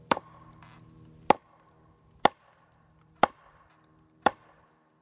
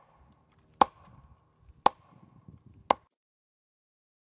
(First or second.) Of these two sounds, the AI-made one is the first